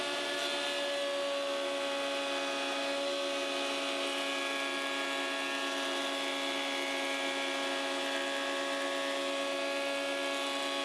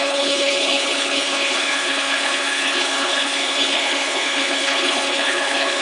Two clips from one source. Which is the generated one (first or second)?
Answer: second